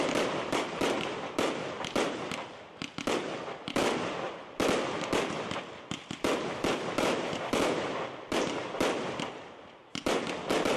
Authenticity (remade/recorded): remade